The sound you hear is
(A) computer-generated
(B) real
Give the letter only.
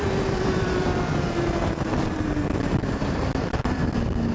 A